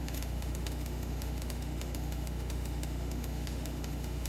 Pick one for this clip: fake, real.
fake